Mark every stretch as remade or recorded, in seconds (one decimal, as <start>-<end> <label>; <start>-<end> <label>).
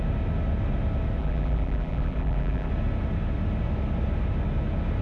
0.0-1.2 recorded; 1.2-2.7 remade; 2.7-5.0 recorded